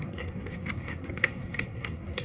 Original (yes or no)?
no